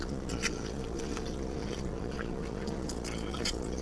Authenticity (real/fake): fake